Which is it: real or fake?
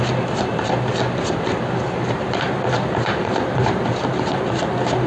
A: real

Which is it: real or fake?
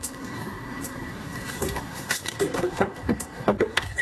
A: fake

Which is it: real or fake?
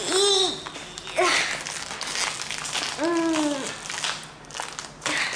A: real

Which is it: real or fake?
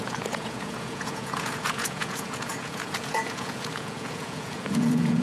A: fake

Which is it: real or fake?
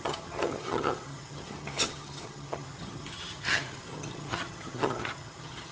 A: fake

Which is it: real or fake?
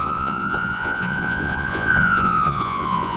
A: fake